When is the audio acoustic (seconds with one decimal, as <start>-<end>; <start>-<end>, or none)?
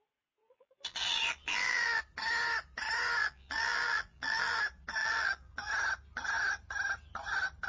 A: 0.0-0.4; 2.0-3.2; 4.6-5.0; 5.7-7.7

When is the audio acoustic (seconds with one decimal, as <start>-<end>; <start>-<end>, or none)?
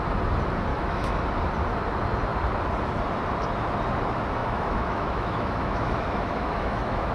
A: 0.0-0.7; 1.2-4.4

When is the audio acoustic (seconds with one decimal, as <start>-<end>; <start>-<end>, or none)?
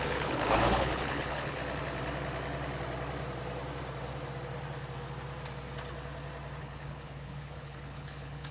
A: 1.6-6.6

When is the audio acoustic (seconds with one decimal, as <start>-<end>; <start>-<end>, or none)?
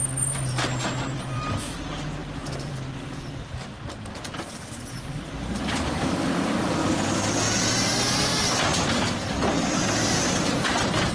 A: 6.8-8.9